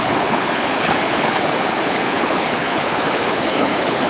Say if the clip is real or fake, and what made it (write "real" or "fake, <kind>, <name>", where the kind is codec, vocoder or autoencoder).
fake, codec, HILCodec